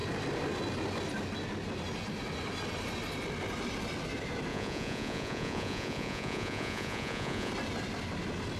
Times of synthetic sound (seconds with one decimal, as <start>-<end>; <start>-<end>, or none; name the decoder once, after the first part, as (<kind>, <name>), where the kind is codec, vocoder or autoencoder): 4.5-7.5 (vocoder, Vocos)

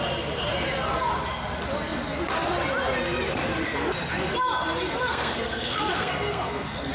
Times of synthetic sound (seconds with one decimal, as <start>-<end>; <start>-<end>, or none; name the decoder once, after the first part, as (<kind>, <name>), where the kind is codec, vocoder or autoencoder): 5.1-6.9 (codec, SNAC)